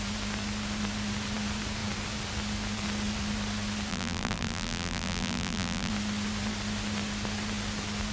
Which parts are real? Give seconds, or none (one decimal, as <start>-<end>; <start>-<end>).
0.0-3.9; 5.9-8.1